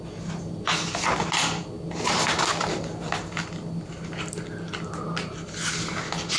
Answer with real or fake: real